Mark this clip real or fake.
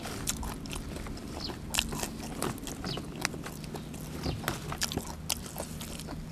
real